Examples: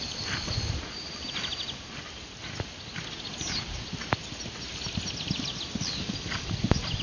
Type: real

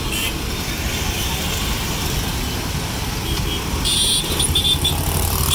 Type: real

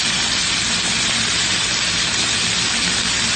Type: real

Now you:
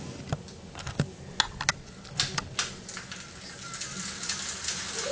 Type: real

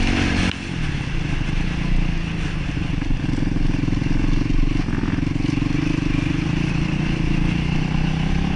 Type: real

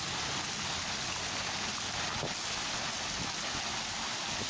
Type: real